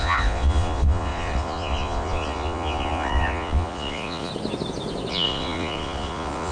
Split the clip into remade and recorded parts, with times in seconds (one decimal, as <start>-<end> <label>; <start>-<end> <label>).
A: 0.0-4.3 remade; 4.3-5.1 recorded; 5.1-6.5 remade